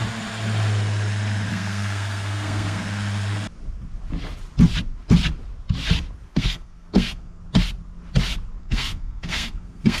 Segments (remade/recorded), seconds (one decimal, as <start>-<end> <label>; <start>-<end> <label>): 0.0-1.5 recorded; 1.5-2.8 remade; 2.8-6.3 recorded; 6.3-7.4 remade; 7.4-8.6 recorded; 8.6-10.0 remade